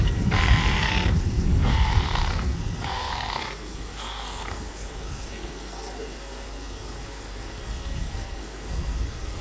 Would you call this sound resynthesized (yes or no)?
yes